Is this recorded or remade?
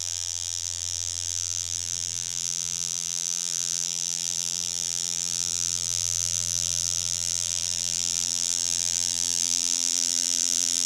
remade